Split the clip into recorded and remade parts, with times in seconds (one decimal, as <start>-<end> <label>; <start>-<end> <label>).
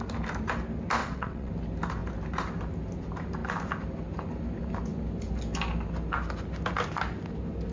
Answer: 0.0-1.0 recorded; 1.0-1.5 remade; 1.5-7.7 recorded